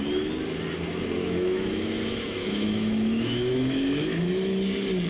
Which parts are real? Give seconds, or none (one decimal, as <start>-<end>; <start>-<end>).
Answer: 0.0-1.2; 4.3-5.1